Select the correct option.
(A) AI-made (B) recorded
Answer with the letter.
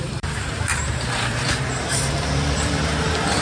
A